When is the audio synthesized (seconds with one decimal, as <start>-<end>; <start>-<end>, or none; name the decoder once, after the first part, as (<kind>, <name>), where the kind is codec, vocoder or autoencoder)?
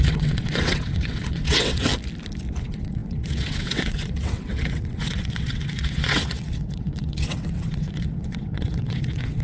0.0-1.9 (vocoder, WaveNeXt); 2.6-9.4